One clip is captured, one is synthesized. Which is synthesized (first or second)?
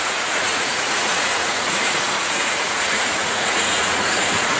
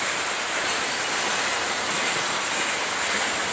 first